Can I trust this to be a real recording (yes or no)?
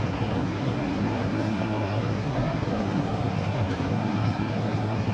no